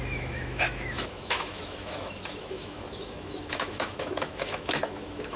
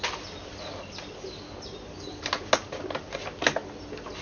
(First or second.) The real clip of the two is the second